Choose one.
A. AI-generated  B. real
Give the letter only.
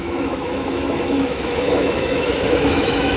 A